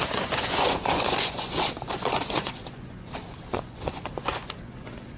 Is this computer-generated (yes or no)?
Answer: yes